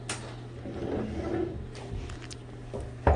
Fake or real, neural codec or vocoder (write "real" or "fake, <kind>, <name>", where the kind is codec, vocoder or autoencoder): real